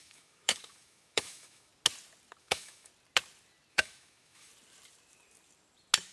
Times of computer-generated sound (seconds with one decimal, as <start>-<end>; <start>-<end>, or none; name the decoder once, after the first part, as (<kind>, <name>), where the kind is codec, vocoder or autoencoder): 0.0-1.7 (autoencoder, DAC-VAE); 2.4-2.9; 3.7-4.5